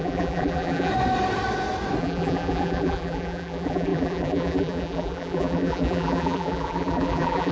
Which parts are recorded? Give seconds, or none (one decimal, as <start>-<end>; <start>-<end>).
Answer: 0.9-2.0